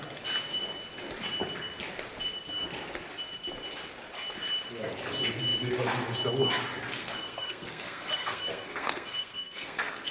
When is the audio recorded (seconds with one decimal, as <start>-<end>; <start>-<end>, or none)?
0.0-7.0

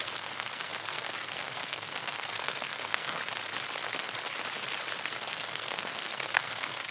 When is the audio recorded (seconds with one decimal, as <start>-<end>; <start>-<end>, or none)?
3.2-5.0

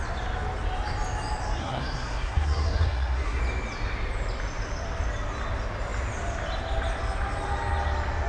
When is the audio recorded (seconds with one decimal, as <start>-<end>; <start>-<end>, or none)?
0.0-1.6; 3.4-8.3

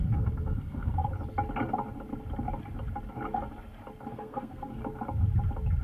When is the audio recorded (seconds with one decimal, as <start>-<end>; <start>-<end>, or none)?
1.1-4.1; 4.8-5.8

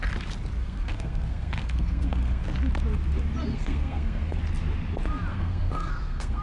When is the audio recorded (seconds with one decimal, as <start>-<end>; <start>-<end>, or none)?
0.0-0.6; 2.4-3.5; 4.4-5.3

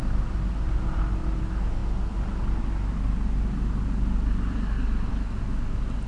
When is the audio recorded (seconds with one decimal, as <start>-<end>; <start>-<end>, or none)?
0.0-6.1

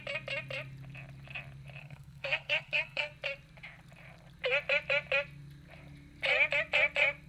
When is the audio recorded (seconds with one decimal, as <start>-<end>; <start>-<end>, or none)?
0.0-1.8; 3.1-7.3